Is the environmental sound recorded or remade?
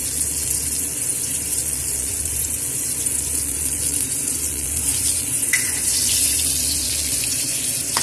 remade